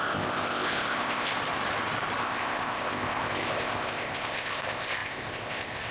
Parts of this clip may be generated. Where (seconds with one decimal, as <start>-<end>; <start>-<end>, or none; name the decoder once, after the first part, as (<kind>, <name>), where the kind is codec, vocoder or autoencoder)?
0.0-1.3 (codec, ZipCodec); 2.2-5.9